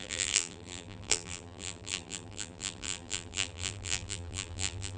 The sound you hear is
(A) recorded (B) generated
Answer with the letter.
B